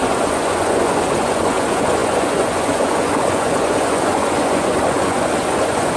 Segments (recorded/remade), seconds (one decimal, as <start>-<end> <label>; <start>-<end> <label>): 0.0-6.0 remade

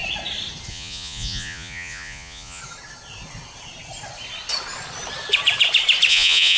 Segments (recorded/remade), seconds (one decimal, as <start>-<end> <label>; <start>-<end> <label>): 0.0-0.7 recorded; 0.7-2.6 remade; 2.6-6.1 recorded; 6.1-6.6 remade

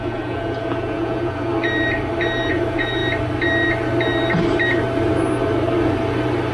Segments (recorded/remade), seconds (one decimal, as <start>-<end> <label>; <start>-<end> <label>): 0.0-1.5 remade; 1.5-2.5 recorded; 2.5-3.0 remade; 3.0-6.5 recorded